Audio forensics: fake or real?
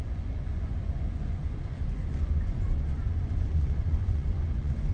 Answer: fake